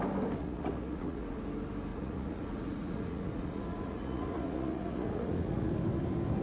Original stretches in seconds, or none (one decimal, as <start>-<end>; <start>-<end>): 0.0-0.4; 1.4-1.9; 5.7-6.4